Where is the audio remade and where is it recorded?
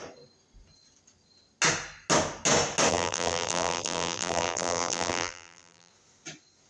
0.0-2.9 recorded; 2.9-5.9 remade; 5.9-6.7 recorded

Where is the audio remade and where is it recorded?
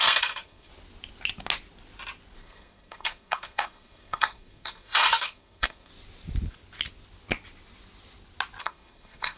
0.0-0.7 remade; 0.7-2.4 recorded; 2.4-5.9 remade; 5.9-8.6 recorded; 8.6-9.4 remade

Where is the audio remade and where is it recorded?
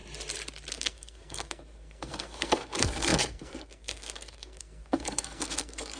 0.0-0.7 recorded; 0.7-6.0 remade